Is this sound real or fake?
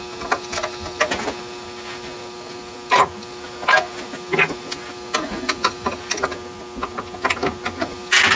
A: real